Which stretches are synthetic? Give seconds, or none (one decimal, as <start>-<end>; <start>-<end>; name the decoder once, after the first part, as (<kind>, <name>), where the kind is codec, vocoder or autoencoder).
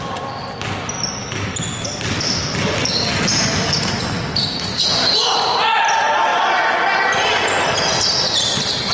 none